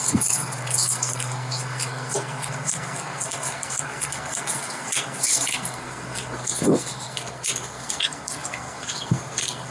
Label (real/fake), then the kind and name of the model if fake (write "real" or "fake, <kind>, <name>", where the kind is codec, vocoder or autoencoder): fake, codec, SNAC